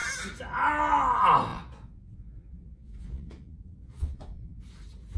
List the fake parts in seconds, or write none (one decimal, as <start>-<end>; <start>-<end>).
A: 1.5-4.6